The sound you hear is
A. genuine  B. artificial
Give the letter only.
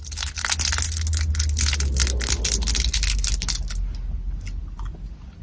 A